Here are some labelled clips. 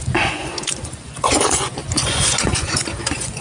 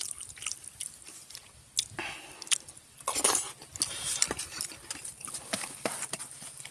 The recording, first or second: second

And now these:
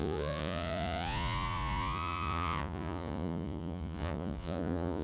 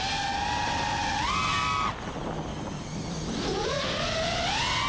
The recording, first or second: second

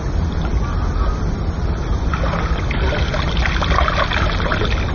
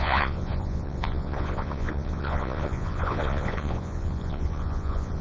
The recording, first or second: first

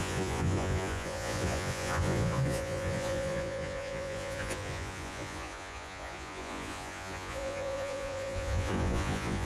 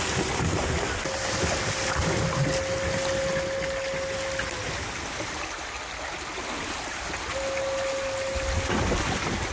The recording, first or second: second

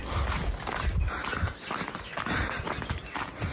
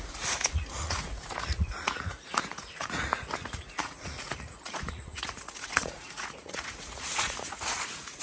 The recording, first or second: first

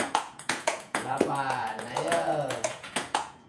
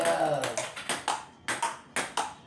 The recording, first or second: second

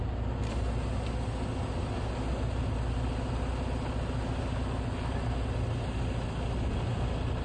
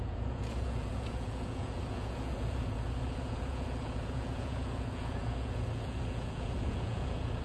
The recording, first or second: first